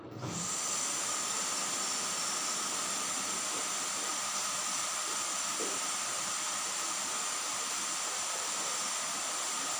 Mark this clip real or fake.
fake